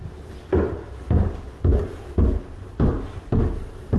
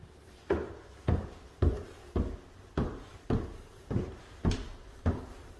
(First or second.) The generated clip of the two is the second